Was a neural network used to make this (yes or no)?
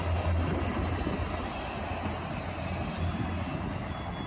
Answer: no